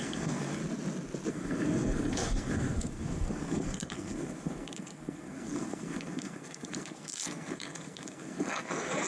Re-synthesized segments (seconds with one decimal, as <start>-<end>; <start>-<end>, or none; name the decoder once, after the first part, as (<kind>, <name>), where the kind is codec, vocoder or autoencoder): 0.0-0.6 (codec, SNAC); 1.3-9.1